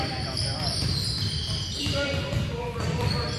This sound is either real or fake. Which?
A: fake